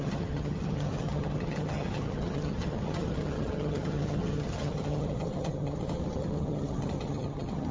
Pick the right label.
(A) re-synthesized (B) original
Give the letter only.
A